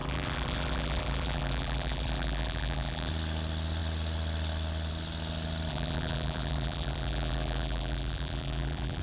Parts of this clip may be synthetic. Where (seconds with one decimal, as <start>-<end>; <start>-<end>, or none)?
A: 0.0-3.1; 5.7-9.0